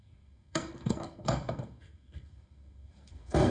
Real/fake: fake